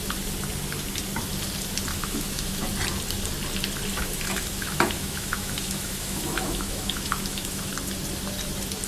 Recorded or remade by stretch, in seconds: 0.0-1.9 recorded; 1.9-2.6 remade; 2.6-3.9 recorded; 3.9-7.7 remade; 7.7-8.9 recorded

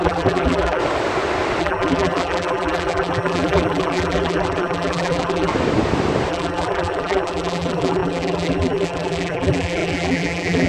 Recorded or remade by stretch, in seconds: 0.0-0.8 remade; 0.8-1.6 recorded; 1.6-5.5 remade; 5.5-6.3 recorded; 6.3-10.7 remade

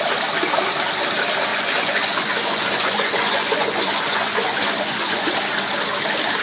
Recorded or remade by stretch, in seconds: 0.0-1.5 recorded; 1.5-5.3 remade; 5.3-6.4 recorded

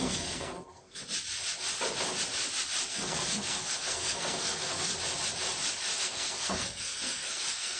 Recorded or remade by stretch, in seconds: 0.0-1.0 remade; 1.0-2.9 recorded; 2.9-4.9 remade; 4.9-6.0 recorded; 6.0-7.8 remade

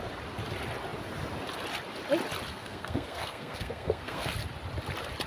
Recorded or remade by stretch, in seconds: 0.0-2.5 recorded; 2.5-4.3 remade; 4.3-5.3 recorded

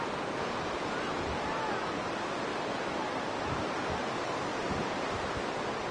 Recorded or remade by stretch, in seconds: 0.0-0.8 recorded; 0.8-1.8 remade; 1.8-2.5 recorded; 2.5-3.9 remade; 3.9-4.5 recorded; 4.5-5.9 remade

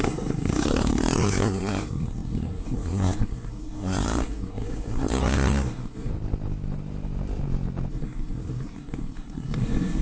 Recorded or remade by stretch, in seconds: 0.0-6.1 remade; 6.1-7.9 recorded; 7.9-10.0 remade

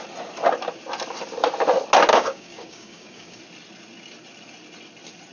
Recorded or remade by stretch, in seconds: 0.0-2.1 recorded; 2.1-3.4 remade; 3.4-5.3 recorded